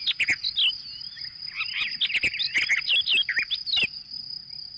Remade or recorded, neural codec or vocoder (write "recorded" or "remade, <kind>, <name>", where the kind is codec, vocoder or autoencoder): recorded